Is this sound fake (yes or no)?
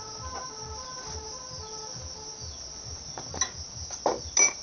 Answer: no